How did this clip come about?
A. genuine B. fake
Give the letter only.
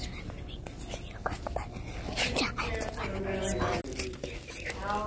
A